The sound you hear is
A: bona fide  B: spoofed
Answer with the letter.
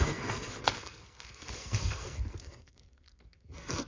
B